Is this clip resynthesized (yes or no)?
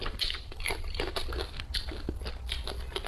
no